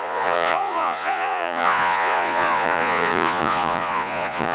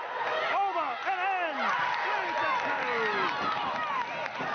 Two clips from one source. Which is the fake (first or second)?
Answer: first